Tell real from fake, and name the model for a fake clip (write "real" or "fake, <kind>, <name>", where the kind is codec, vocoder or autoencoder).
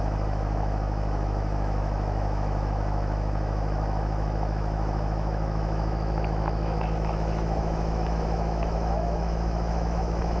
fake, autoencoder, DAC-VAE